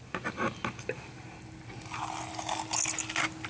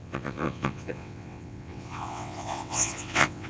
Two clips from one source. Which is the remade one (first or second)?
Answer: second